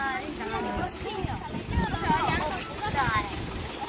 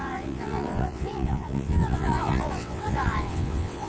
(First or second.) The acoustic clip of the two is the first